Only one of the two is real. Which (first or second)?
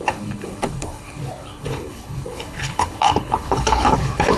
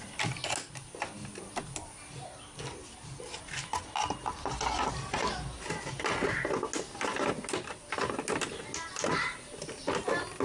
second